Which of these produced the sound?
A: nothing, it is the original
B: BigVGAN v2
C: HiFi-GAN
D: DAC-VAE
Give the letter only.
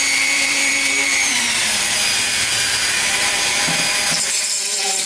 B